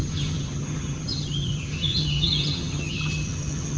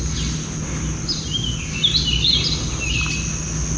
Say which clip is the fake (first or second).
first